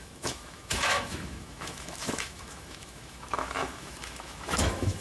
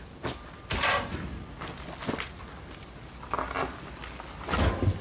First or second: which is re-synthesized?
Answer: first